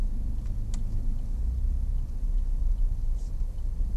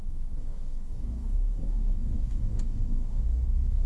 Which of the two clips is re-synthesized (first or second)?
second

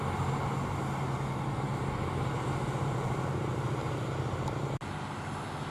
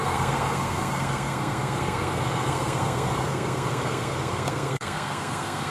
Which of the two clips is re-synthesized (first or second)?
second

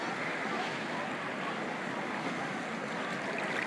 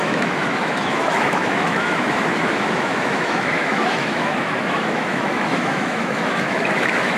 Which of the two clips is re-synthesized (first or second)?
second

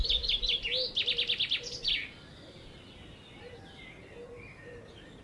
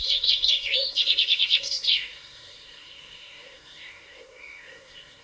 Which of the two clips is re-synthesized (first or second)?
second